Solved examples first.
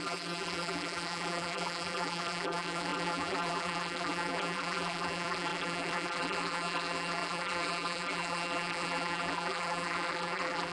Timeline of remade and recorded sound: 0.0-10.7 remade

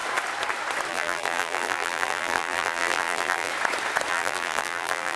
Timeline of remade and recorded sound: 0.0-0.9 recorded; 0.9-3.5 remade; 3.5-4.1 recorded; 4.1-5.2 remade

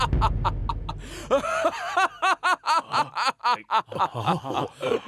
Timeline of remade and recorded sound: 0.0-5.1 recorded

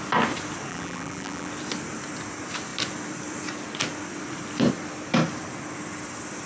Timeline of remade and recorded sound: 0.0-0.7 recorded; 0.7-1.5 remade; 1.5-6.5 recorded

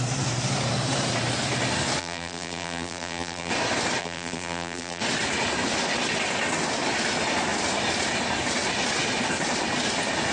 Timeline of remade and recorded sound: 0.0-2.0 recorded; 2.0-3.5 remade; 3.5-4.0 recorded; 4.0-5.0 remade; 5.0-10.3 recorded

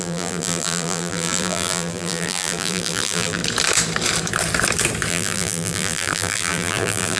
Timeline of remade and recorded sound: 0.0-3.4 remade; 3.4-5.1 recorded; 5.1-7.2 remade

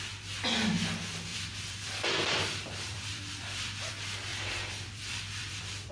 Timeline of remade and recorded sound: 0.0-1.3 recorded; 1.3-3.9 remade; 3.9-4.3 recorded; 4.3-5.9 remade